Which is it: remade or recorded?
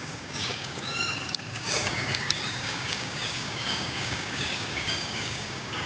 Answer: remade